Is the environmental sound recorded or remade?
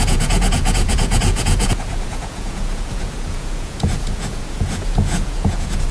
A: remade